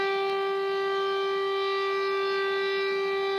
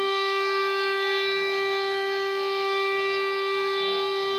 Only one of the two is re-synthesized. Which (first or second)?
second